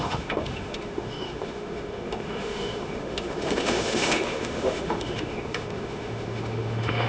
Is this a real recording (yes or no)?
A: no